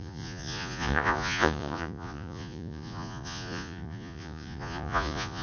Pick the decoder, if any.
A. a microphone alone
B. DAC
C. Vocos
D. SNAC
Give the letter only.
C